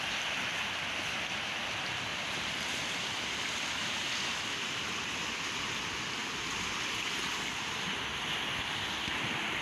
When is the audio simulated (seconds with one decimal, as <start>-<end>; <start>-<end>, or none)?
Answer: 2.1-3.7